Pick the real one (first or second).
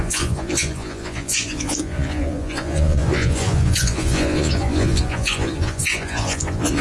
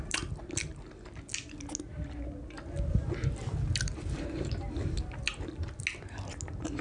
second